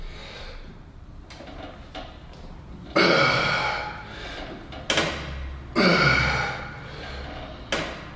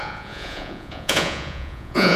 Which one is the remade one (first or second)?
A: second